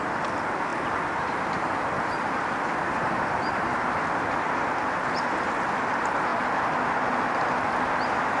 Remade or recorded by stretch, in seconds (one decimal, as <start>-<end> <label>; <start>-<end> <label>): 0.0-8.4 recorded